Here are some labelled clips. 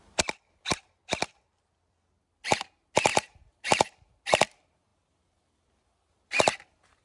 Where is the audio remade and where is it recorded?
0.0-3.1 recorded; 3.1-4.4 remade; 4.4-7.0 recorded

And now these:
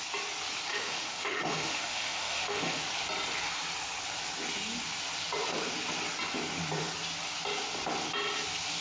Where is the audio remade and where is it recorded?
0.0-0.7 recorded; 0.7-2.8 remade; 2.8-8.8 recorded

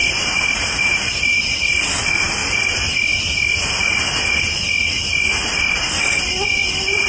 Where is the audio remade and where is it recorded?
0.0-1.6 remade; 1.6-7.1 recorded

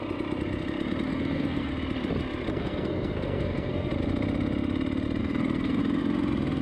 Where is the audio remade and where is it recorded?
0.0-1.1 recorded; 1.1-1.7 remade; 1.7-2.5 recorded; 2.5-3.9 remade; 3.9-5.2 recorded; 5.2-5.8 remade; 5.8-6.6 recorded

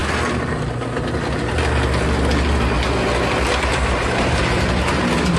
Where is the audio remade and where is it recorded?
0.0-3.7 recorded; 3.7-4.8 remade; 4.8-5.4 recorded

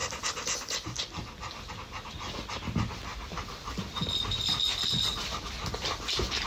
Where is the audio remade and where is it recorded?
0.0-1.7 remade; 1.7-3.1 recorded; 3.1-5.5 remade; 5.5-6.5 recorded